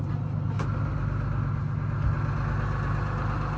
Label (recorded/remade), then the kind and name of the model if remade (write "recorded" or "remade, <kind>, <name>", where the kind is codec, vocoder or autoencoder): recorded